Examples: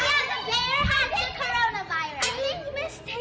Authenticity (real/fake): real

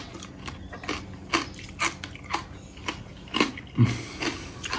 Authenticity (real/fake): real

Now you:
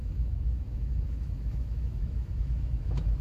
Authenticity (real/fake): fake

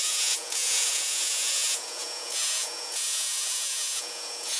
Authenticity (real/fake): fake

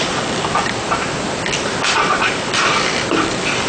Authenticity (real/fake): real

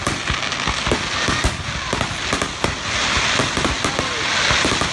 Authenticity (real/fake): real